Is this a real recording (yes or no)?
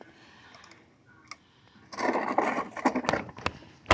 yes